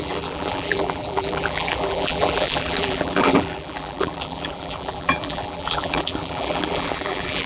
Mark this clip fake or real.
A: fake